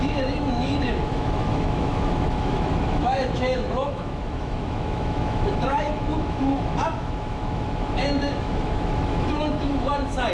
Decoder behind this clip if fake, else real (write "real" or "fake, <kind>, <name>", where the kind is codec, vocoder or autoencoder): fake, autoencoder, DAC-VAE